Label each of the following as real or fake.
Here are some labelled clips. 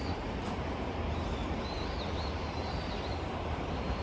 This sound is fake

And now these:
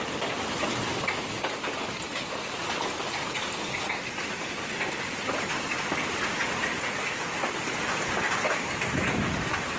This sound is real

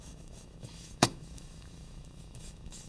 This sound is fake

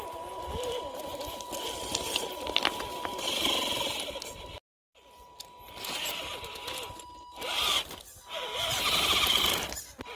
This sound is real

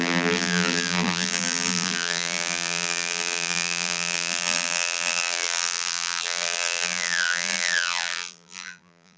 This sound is fake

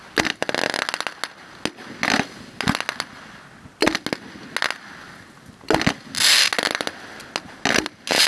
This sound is real